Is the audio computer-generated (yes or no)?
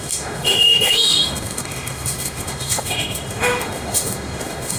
yes